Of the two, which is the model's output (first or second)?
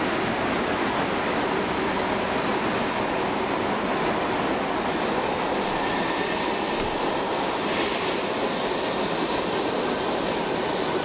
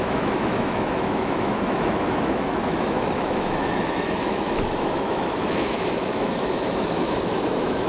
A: second